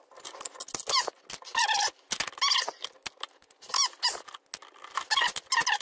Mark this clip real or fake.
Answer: real